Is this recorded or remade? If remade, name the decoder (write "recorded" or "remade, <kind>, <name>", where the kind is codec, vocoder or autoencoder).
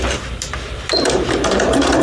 remade, vocoder, BigVGAN v2